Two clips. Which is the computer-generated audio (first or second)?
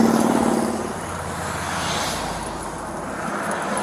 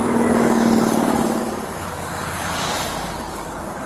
second